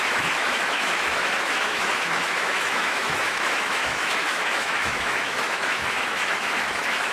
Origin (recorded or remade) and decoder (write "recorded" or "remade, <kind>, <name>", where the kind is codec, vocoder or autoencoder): remade, autoencoder, DAC-VAE